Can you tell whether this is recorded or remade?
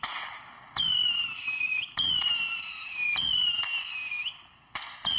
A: recorded